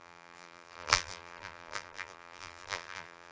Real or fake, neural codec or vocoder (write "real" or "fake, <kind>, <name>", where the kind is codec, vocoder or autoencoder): fake, vocoder, BigVGAN v2